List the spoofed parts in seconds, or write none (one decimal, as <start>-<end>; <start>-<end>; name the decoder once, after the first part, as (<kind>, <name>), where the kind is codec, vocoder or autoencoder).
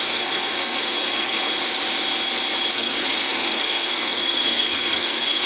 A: 0.0-1.5 (codec, SNAC); 2.7-5.5